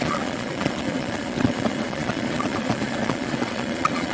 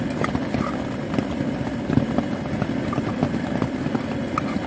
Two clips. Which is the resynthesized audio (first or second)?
first